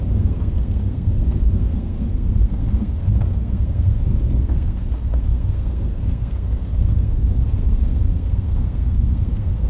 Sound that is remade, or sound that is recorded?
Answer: remade